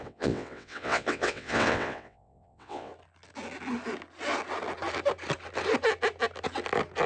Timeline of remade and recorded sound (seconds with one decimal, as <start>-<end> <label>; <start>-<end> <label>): 0.0-2.9 remade; 2.9-7.1 recorded